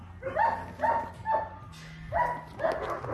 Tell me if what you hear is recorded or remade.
recorded